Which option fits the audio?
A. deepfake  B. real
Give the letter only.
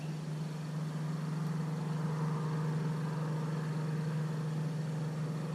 B